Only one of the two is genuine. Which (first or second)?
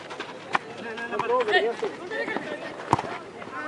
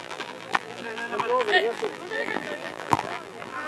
first